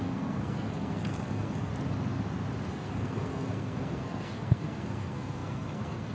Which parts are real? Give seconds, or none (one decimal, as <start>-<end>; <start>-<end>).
1.7-2.7